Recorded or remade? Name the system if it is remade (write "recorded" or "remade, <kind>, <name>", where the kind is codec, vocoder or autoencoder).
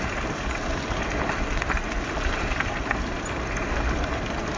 recorded